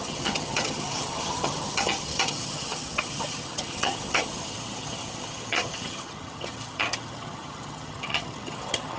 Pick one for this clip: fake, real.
fake